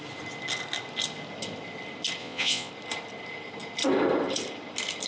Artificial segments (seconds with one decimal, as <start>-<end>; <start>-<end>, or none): 2.2-2.7